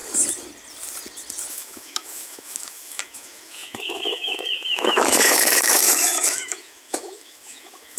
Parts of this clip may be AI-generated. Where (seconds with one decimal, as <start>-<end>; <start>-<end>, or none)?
1.5-8.0